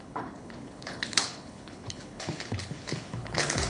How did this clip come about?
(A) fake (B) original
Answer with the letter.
A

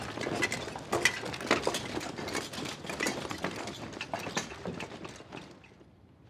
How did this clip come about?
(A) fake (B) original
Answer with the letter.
B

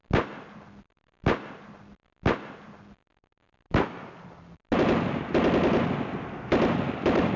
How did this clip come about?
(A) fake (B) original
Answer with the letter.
B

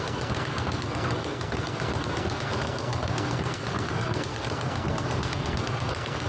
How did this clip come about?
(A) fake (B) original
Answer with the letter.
A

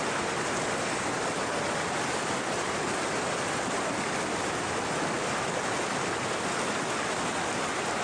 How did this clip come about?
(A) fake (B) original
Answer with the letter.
B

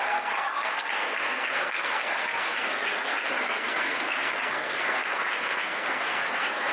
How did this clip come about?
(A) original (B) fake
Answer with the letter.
B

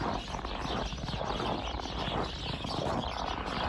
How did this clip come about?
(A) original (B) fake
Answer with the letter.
A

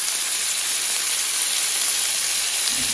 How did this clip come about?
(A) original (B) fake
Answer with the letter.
B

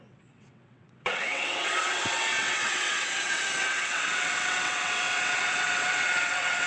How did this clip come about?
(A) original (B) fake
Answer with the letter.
B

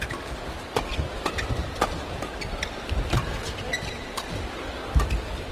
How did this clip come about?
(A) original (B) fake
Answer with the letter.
A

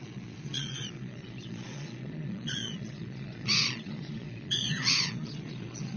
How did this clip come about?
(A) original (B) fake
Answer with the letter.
B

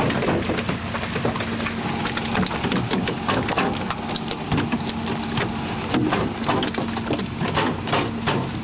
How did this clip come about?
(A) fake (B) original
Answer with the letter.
B